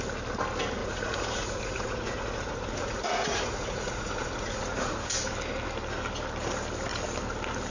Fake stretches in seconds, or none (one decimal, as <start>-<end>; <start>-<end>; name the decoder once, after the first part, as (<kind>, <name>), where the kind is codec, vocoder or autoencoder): 0.8-5.1 (vocoder, Vocos)